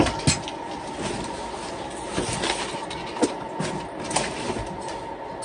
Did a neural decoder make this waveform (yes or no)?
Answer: no